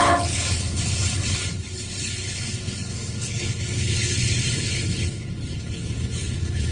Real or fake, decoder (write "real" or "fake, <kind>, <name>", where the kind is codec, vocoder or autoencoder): fake, codec, HILCodec